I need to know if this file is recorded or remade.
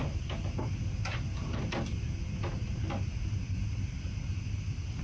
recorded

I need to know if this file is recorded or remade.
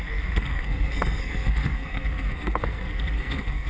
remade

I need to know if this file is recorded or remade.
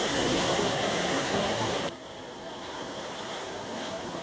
remade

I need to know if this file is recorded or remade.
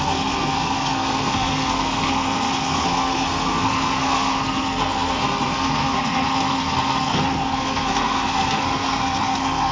remade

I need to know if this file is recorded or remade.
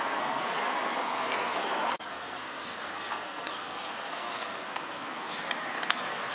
remade